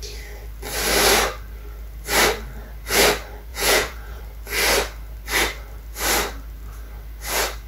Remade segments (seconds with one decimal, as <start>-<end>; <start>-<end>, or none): 3.5-4.2